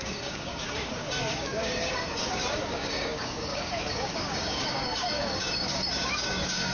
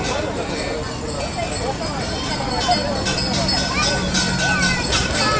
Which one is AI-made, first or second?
first